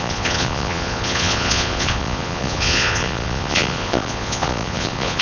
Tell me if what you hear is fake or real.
fake